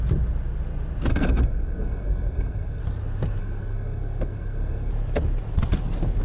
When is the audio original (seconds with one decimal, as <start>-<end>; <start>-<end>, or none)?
0.0-1.1; 2.8-3.4; 4.9-6.2